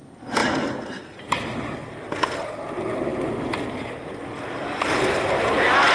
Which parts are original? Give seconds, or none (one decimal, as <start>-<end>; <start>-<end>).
0.0-0.4; 1.3-5.9